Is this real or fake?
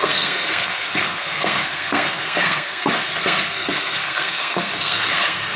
fake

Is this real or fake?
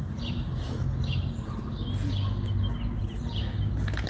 real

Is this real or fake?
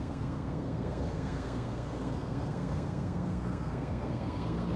fake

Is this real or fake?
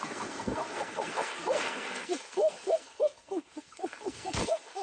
fake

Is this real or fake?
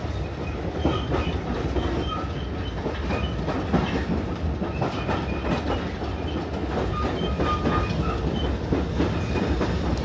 real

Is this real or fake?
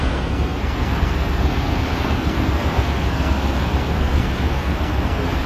fake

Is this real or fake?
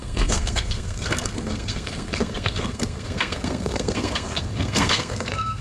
fake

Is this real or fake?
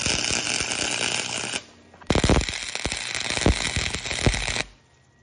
real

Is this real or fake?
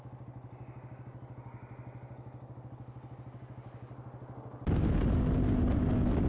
real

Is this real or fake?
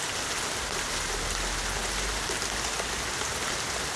real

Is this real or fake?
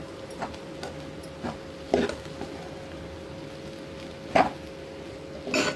real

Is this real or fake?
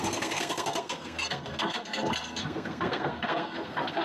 fake